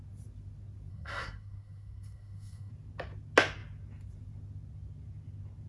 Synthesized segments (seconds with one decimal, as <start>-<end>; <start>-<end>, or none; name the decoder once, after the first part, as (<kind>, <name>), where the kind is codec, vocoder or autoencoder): 0.9-2.7 (codec, SNAC)